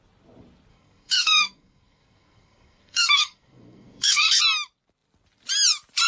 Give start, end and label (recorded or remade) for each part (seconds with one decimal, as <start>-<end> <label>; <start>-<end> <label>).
0.0-0.7 recorded; 0.7-4.4 remade; 4.4-6.1 recorded